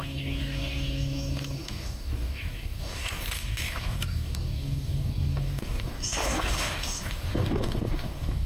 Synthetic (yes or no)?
yes